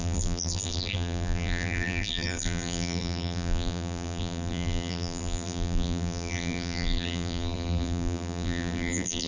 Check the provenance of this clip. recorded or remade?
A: remade